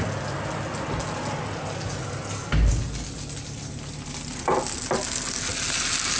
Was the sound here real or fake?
real